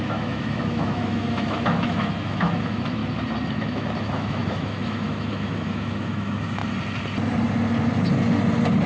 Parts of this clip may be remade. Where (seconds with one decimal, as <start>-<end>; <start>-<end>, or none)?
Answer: 0.0-3.0; 3.5-6.6